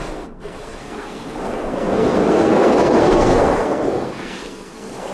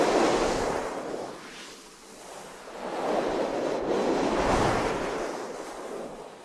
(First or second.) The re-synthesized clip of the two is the first